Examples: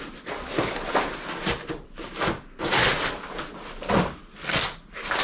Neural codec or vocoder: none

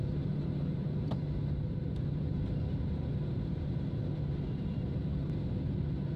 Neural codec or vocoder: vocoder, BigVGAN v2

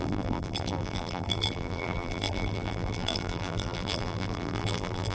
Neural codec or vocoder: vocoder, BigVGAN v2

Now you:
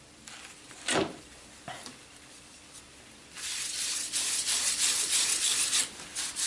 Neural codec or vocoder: vocoder, BigVGAN v2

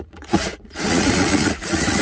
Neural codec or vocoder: vocoder, Vocos